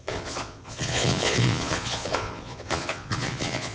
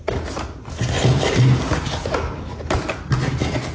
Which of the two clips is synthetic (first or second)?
first